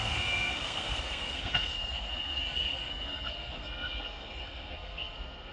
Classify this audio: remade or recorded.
remade